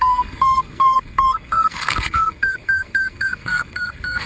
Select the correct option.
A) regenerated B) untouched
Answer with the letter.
A